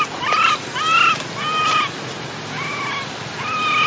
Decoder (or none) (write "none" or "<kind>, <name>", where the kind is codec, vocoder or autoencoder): none